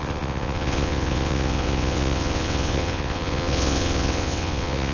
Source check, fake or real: fake